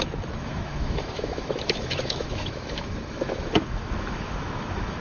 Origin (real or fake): fake